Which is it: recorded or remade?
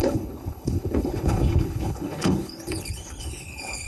remade